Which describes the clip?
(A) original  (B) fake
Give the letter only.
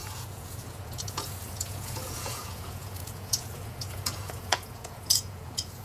B